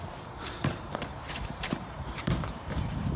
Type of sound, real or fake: fake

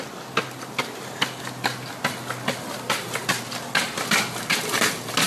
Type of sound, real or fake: real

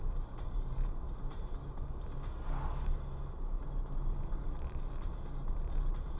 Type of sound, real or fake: real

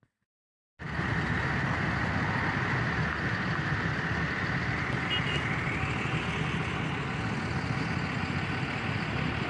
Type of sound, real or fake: real